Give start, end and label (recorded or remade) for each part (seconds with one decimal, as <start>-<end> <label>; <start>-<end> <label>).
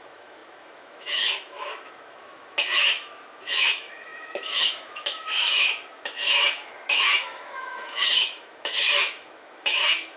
0.0-10.2 remade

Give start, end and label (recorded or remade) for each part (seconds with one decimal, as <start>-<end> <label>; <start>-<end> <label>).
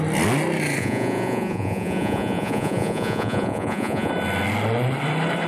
0.0-0.8 recorded; 0.8-4.1 remade; 4.1-5.5 recorded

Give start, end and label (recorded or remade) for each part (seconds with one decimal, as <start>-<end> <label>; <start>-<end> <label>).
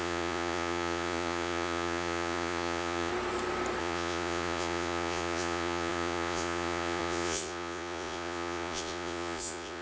0.0-3.1 remade; 3.1-3.8 recorded; 3.8-9.8 remade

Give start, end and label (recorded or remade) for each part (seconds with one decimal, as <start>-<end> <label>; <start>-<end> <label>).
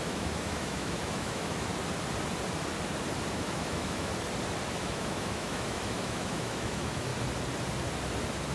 0.0-1.7 remade; 1.7-3.3 recorded; 3.3-4.1 remade; 4.1-4.7 recorded; 4.7-7.1 remade; 7.1-8.5 recorded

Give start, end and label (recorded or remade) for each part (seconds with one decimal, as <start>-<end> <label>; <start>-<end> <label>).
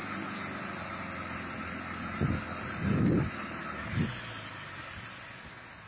0.0-5.9 recorded